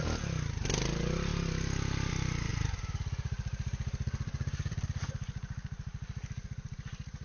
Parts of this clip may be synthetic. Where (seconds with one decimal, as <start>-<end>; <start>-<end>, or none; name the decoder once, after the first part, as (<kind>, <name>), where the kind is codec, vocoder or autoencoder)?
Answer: 0.0-1.3 (vocoder, BigVGAN v2); 2.1-7.2